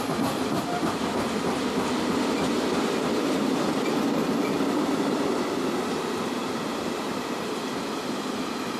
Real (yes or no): yes